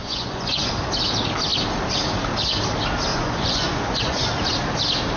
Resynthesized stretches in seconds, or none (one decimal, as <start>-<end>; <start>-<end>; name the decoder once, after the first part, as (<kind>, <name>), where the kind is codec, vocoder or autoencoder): 0.0-0.7 (vocoder, Vocos); 3.1-4.3